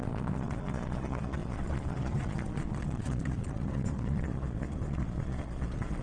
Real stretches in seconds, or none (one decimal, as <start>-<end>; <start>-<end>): none